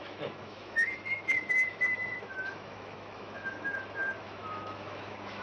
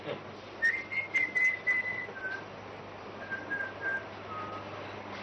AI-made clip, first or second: first